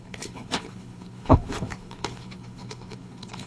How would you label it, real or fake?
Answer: fake